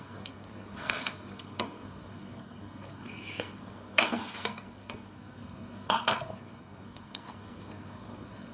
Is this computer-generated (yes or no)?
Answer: yes